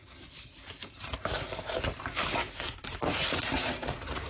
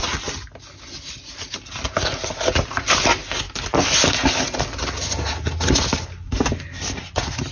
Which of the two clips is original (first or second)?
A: second